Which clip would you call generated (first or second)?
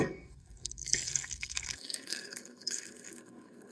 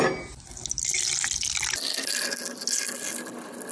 first